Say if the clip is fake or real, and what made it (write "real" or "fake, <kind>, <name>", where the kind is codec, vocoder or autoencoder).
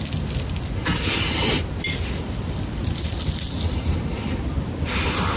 real